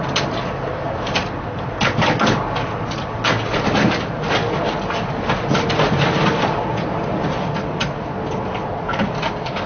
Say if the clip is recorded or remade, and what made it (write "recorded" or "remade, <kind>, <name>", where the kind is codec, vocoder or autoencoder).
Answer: recorded